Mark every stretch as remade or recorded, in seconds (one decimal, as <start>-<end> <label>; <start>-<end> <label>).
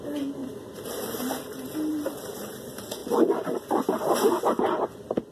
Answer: 0.0-0.4 recorded; 0.4-1.3 remade; 1.3-1.9 recorded; 1.9-2.5 remade; 2.5-3.0 recorded; 3.0-4.3 remade; 4.3-5.3 recorded